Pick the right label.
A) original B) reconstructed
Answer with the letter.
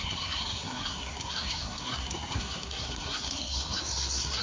B